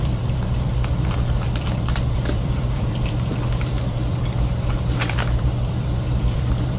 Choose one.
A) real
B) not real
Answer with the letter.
B